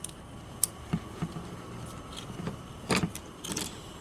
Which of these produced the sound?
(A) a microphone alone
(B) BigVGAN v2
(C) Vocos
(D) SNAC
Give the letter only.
A